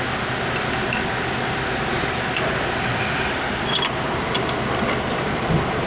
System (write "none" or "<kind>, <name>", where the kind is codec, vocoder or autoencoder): none